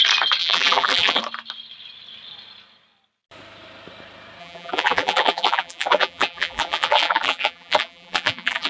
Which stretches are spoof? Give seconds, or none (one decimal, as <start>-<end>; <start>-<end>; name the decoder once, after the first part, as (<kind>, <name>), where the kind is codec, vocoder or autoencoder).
0.4-1.2 (vocoder, BigVGAN v2); 4.4-8.7